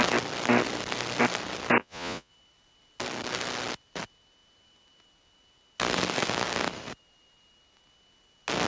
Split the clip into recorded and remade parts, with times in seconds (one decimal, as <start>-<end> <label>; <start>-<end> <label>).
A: 0.0-1.8 recorded; 1.8-2.3 remade; 2.3-8.7 recorded